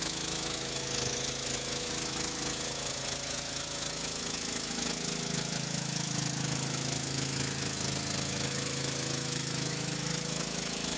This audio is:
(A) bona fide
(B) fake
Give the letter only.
B